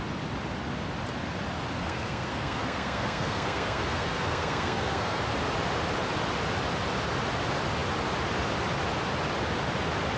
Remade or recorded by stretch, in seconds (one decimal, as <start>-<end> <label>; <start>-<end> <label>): 0.0-1.8 recorded; 1.8-5.2 remade; 5.2-10.2 recorded